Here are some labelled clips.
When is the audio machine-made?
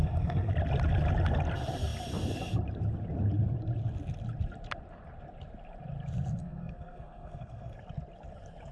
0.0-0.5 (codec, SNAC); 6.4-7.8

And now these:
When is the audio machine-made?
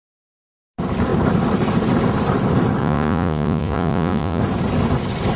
2.8-4.4 (vocoder, Vocos)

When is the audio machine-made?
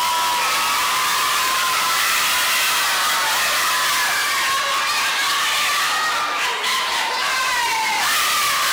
1.1-2.2 (vocoder, BigVGAN v2); 6.9-7.6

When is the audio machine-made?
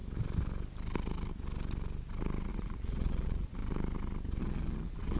2.5-3.6 (vocoder, Vocos); 4.4-5.2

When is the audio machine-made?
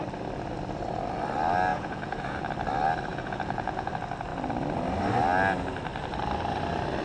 1.7-2.5 (vocoder, Vocos); 3.1-3.9